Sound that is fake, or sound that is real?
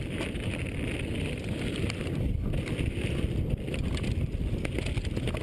real